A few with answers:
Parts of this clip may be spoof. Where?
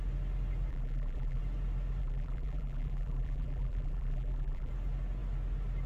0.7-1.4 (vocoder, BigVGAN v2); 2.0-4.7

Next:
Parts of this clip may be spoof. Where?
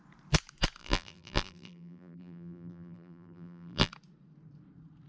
0.8-3.9 (vocoder, BigVGAN v2)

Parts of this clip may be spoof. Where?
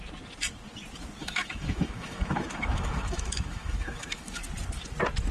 1.2-4.4 (autoencoder, DAC-VAE)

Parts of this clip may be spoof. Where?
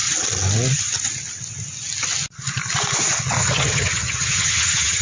3.4-5.0 (vocoder, HiFi-GAN)